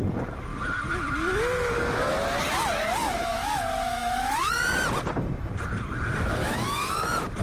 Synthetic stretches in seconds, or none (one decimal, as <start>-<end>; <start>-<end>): 3.0-4.5; 6.4-6.9